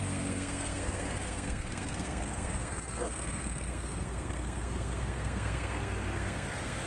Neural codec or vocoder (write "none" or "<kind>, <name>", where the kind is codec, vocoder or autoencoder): codec, SNAC